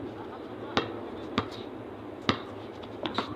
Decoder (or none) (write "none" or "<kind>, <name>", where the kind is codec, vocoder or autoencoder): none